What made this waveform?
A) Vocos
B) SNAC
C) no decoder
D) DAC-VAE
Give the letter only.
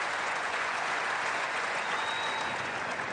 A